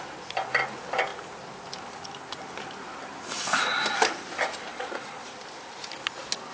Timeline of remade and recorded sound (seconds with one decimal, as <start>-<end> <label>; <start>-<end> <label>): 0.0-4.7 recorded; 4.7-5.3 remade; 5.3-6.5 recorded